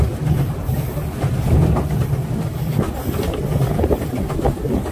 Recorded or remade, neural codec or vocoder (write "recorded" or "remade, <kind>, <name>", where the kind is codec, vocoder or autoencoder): recorded